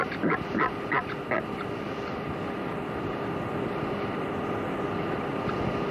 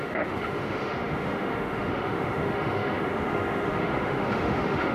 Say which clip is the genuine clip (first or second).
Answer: first